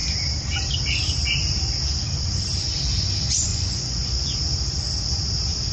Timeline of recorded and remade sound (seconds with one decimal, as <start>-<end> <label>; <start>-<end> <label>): 0.0-3.5 recorded; 3.5-4.4 remade; 4.4-5.7 recorded